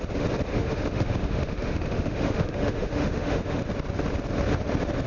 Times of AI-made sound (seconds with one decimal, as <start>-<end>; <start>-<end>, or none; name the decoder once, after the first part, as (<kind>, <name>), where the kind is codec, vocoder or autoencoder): 0.5-3.6 (autoencoder, DAC-VAE)